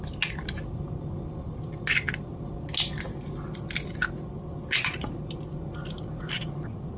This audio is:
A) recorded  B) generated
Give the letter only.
A